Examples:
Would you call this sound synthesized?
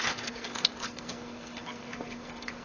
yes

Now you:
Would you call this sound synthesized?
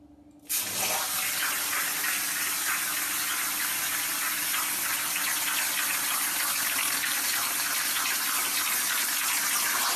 no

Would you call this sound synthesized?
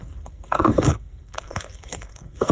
yes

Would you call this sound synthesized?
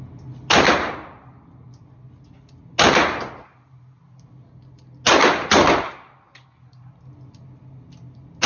no